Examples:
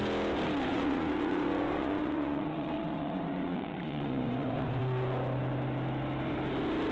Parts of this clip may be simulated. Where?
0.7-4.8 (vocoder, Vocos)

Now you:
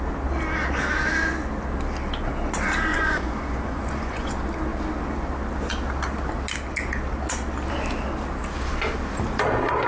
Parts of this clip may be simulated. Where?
2.9-4.3 (vocoder, Vocos)

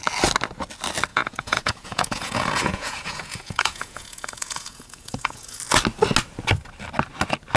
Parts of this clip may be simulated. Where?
1.1-5.6 (vocoder, Vocos)

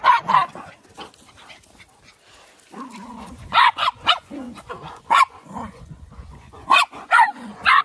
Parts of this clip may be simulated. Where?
3.1-7.8 (vocoder, Vocos)

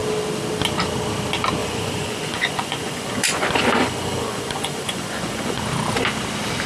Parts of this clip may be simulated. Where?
1.6-5.6 (vocoder, Vocos)

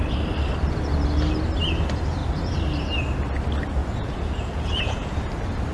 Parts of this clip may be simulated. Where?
3.8-5.1 (vocoder, Vocos)

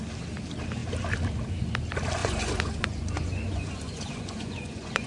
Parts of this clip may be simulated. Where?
2.2-5.1 (vocoder, Vocos)

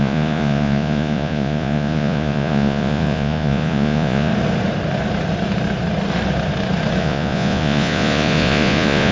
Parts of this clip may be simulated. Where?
0.0-4.3 (vocoder, Vocos); 7.0-9.1